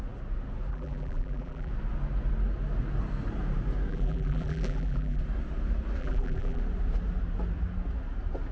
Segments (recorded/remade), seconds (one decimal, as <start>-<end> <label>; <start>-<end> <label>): 0.0-0.7 recorded; 0.7-1.7 remade; 1.7-3.9 recorded; 3.9-5.2 remade; 5.2-6.0 recorded; 6.0-6.6 remade; 6.6-8.5 recorded